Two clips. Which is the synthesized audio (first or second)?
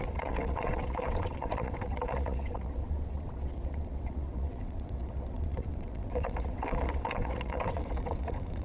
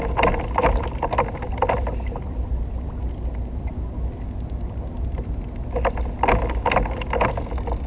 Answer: first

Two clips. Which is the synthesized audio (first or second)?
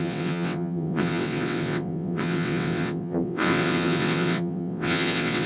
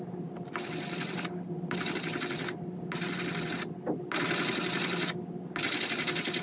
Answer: first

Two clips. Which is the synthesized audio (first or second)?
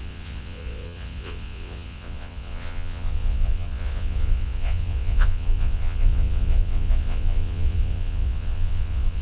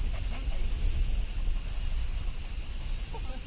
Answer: first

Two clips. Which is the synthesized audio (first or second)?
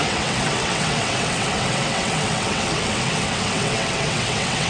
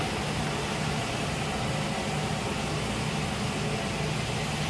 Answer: first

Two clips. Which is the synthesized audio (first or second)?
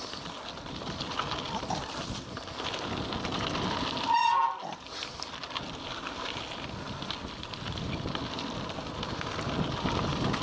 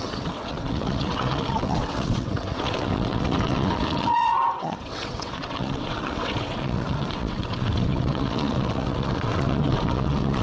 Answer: second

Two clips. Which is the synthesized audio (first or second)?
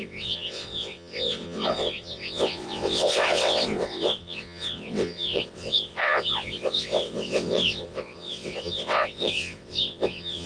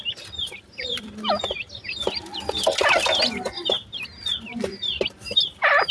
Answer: first